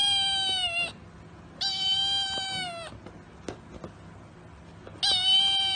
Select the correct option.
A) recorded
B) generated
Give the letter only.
A